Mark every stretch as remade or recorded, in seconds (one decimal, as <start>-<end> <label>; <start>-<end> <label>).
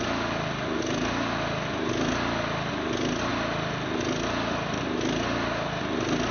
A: 0.0-6.3 recorded